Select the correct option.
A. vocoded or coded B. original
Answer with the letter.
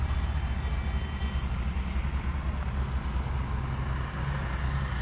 B